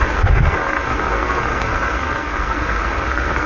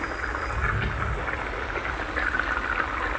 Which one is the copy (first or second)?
first